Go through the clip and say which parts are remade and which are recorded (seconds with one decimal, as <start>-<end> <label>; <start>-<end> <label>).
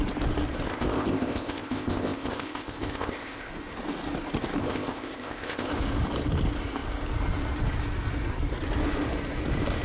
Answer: 0.0-0.7 recorded; 0.7-3.5 remade; 3.5-4.6 recorded; 4.6-5.7 remade; 5.7-9.8 recorded